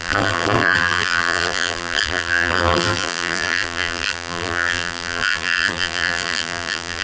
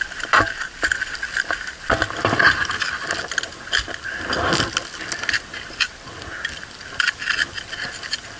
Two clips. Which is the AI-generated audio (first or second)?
first